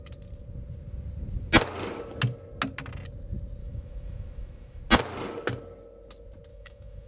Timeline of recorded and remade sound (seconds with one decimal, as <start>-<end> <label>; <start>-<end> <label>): 0.0-3.6 recorded; 3.6-4.8 remade; 4.8-6.5 recorded; 6.5-7.1 remade